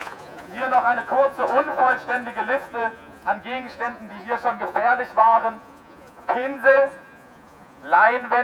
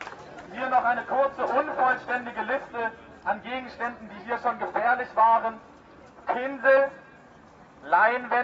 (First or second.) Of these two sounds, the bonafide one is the second